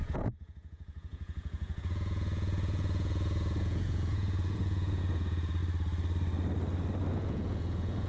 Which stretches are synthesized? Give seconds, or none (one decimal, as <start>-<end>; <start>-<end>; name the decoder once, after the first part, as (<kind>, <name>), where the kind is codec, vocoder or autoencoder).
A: 0.0-5.6 (vocoder, Vocos); 7.1-8.1